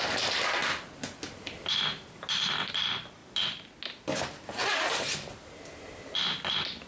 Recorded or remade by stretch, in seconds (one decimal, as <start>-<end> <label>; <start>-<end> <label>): 0.0-6.9 recorded